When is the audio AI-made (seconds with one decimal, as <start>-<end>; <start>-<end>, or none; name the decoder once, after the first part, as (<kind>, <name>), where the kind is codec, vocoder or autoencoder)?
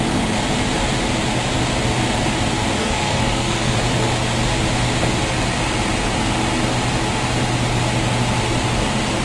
2.8-3.8 (codec, SNAC)